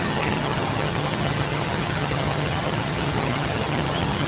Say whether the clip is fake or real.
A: fake